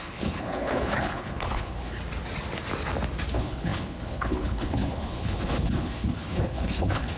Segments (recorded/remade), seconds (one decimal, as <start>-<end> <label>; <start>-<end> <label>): 0.0-1.9 remade; 1.9-3.3 recorded; 3.3-7.2 remade